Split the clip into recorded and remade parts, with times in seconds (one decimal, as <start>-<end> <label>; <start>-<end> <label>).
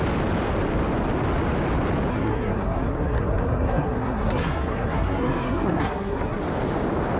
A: 0.0-2.1 recorded; 2.1-6.4 remade; 6.4-7.2 recorded